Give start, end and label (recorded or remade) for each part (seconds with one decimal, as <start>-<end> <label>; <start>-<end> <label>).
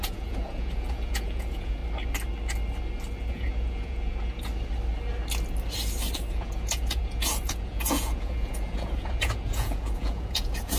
0.0-1.8 remade; 1.8-3.3 recorded; 3.3-4.5 remade; 4.5-6.3 recorded; 6.3-10.8 remade